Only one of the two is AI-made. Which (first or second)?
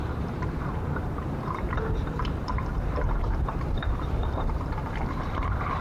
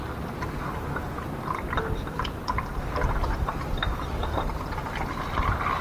first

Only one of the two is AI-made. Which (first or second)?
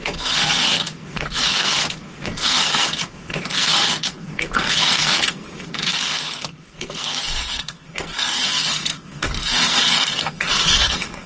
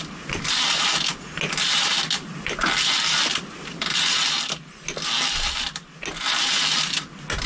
first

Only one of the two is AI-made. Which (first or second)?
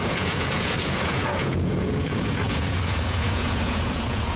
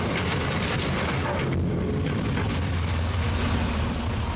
first